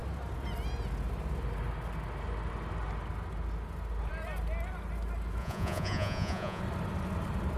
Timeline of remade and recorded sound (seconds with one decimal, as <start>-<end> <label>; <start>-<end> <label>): 0.0-5.4 recorded; 5.4-6.6 remade; 6.6-7.6 recorded